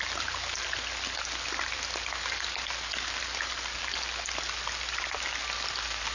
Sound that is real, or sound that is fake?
real